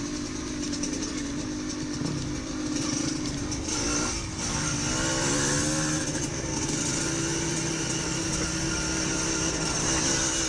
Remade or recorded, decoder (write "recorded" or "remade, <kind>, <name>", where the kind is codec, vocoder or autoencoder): recorded